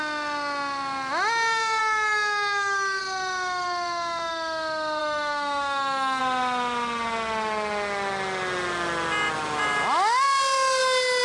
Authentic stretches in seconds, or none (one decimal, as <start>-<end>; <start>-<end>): 0.0-1.8; 3.0-5.0; 6.2-11.2

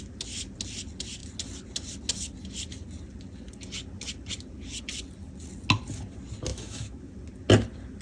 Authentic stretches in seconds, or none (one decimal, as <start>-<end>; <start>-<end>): 0.0-6.5; 7.0-8.0